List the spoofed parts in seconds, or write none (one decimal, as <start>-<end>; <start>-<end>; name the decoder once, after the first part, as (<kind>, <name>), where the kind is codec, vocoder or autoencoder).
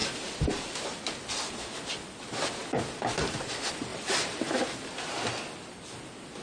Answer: 3.9-4.5 (vocoder, BigVGAN v2)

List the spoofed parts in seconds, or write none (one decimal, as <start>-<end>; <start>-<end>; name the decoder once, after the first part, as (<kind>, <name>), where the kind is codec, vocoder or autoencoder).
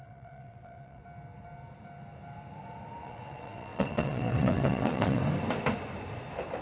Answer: 0.0-1.0 (vocoder, WaveNeXt); 3.0-5.2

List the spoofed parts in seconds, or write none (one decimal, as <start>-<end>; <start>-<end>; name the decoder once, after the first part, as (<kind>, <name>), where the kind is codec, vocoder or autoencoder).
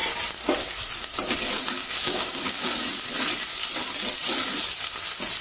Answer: 1.8-2.8 (codec, DAC)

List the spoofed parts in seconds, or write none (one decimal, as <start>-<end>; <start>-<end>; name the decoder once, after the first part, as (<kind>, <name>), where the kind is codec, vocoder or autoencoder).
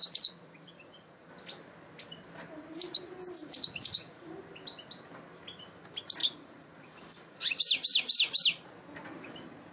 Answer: 0.0-1.3 (vocoder, Vocos); 3.4-4.3; 6.2-7.4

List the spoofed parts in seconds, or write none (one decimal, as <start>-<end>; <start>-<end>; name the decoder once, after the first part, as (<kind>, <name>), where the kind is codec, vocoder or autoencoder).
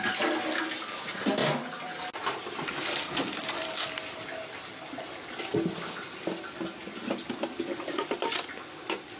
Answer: none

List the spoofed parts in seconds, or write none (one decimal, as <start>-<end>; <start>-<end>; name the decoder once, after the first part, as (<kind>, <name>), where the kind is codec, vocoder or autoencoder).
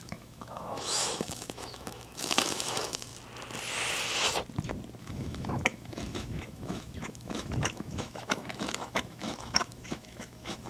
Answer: 0.0-3.1 (autoencoder, DAC-VAE); 5.0-10.7